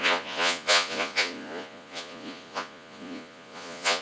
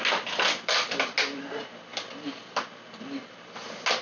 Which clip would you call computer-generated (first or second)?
first